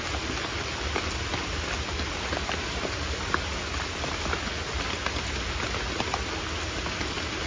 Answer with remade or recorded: recorded